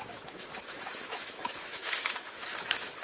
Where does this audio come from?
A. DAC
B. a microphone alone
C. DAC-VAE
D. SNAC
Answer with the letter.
C